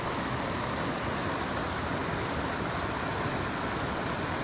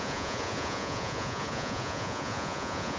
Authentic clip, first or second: first